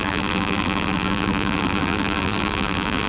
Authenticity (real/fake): fake